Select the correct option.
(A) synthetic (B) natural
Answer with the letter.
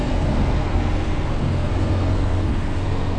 A